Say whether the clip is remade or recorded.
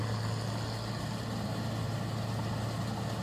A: recorded